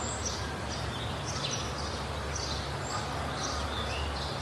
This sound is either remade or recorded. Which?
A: remade